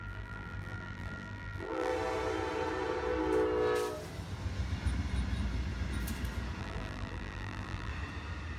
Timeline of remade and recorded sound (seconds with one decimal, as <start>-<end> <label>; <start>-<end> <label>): 0.0-1.9 remade; 1.9-6.6 recorded; 6.6-7.9 remade; 7.9-8.6 recorded

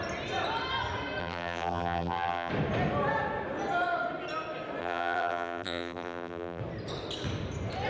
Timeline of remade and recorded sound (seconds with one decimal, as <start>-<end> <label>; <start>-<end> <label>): 0.0-1.2 recorded; 1.2-2.5 remade; 2.5-4.8 recorded; 4.8-6.6 remade; 6.6-7.9 recorded

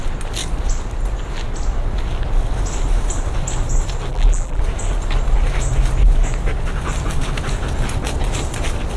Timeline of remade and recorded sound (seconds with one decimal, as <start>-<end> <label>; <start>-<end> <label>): 0.0-4.1 recorded; 4.1-4.6 remade; 4.6-9.0 recorded

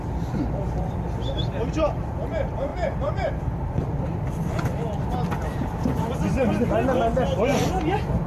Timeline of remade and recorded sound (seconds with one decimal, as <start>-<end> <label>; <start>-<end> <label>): 0.0-8.3 recorded

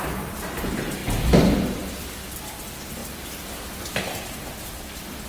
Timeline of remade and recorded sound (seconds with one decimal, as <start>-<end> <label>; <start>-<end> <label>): 0.0-5.3 remade

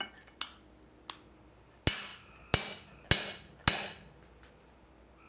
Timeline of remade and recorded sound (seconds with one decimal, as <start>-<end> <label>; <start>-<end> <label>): 0.0-5.3 recorded